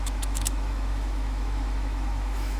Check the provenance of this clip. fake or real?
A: fake